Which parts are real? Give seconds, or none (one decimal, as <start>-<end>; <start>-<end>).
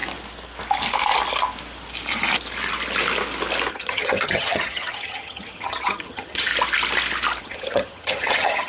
0.0-3.7; 6.5-7.4